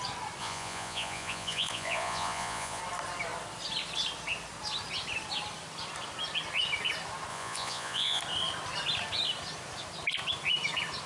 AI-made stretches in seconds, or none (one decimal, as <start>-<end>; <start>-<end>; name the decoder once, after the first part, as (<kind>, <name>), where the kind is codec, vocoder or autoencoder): 0.4-2.8 (vocoder, Vocos); 7.3-8.2